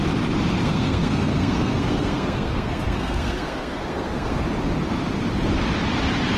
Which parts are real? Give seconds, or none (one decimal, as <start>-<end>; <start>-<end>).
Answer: 0.0-0.6; 4.4-6.4